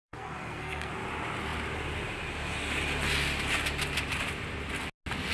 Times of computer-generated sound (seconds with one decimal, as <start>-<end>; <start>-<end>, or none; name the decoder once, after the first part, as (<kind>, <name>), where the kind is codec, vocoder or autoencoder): 0.0-0.9 (codec, SNAC)